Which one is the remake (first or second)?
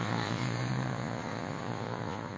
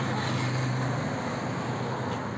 first